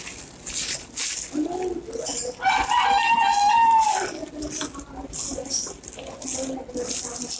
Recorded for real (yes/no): yes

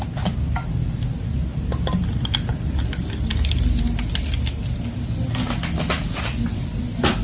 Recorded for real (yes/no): yes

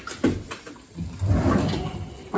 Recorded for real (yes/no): yes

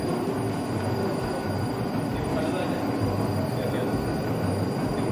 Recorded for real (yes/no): yes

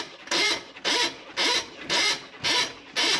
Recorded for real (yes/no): yes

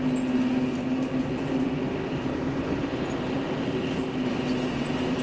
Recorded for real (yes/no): yes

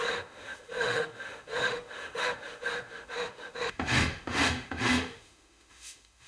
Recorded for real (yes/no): no